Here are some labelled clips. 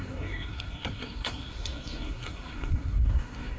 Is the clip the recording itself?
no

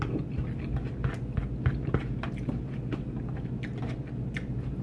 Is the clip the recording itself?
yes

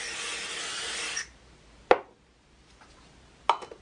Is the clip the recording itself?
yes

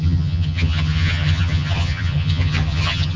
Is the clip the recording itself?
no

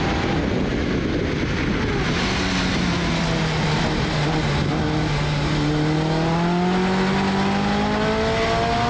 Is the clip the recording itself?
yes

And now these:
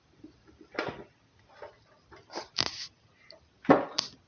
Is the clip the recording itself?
yes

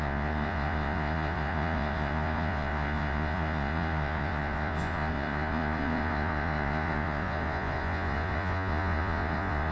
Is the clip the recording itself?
no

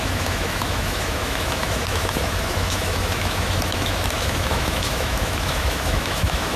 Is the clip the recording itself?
no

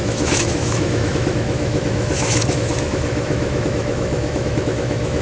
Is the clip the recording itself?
no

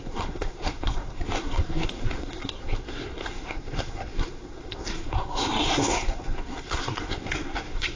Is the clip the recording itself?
no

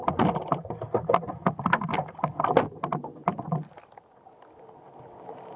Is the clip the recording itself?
yes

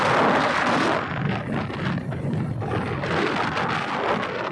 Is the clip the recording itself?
yes